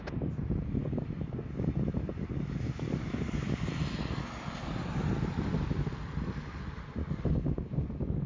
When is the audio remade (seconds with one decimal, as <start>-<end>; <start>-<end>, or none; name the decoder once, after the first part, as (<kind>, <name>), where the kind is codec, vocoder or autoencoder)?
0.8-3.7 (codec, DAC); 7.0-7.7